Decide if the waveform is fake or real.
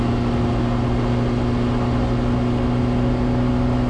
real